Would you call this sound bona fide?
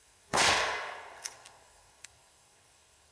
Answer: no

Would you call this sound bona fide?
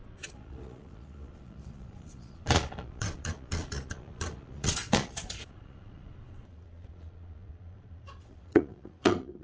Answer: no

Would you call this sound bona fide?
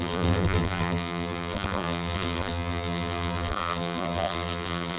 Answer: no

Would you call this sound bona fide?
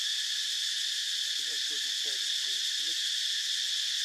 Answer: yes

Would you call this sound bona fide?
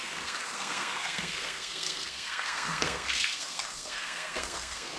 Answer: no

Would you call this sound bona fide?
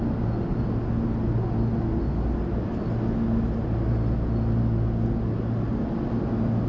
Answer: yes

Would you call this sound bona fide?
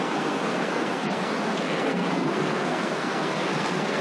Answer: no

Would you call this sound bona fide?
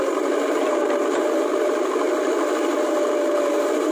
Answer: no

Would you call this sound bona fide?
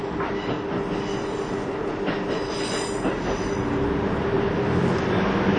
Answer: yes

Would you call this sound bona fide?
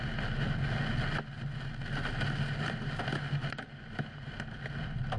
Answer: yes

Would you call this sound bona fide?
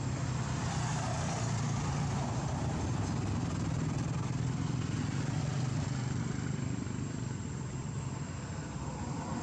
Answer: no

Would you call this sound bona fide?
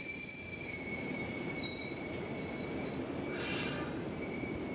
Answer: no